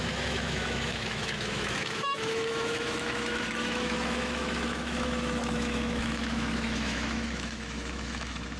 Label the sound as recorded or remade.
remade